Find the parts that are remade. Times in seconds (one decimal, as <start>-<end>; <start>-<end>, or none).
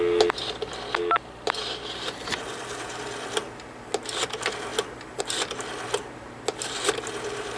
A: none